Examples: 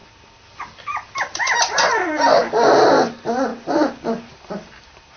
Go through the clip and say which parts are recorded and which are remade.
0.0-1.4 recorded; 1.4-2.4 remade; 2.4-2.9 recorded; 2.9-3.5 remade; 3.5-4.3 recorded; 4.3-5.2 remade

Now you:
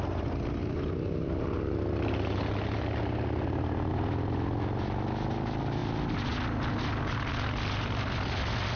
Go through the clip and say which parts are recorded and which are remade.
0.0-8.8 recorded

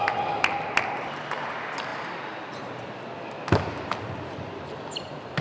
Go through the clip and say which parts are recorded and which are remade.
0.0-5.4 recorded

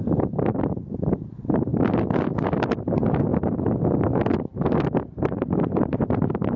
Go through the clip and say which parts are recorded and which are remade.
0.0-1.7 remade; 1.7-2.8 recorded; 2.8-3.3 remade; 3.3-5.2 recorded; 5.2-6.6 remade

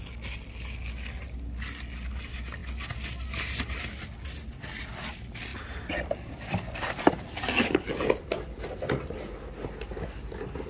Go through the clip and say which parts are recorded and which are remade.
0.0-5.5 recorded; 5.5-7.1 remade; 7.1-10.7 recorded